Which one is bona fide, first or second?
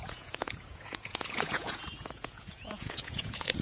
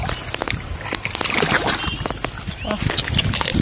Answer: second